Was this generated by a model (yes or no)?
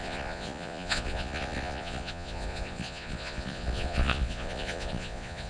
yes